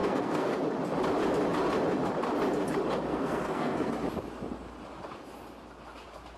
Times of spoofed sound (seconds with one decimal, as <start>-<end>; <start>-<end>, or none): 0.0-0.6; 3.1-3.9